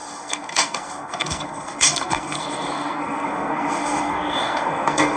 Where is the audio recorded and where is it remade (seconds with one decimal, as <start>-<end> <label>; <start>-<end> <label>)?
0.0-5.2 remade

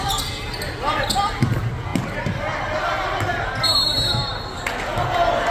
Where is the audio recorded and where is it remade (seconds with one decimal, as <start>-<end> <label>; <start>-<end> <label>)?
0.0-5.5 recorded

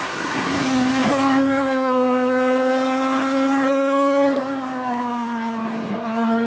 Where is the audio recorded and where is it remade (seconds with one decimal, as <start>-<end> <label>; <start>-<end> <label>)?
0.0-6.5 remade

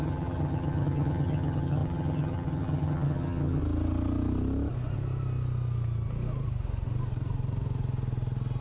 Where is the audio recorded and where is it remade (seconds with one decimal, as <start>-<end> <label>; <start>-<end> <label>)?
0.0-3.6 remade; 3.6-8.6 recorded